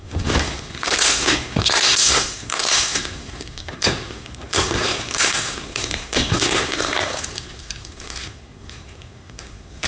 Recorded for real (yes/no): no